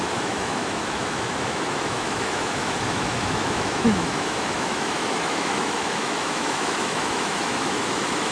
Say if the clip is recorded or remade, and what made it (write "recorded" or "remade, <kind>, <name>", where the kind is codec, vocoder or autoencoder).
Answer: remade, autoencoder, DAC-VAE